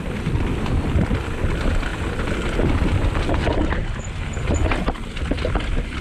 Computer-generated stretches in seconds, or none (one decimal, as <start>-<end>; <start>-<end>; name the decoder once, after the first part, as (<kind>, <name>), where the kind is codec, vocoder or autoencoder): none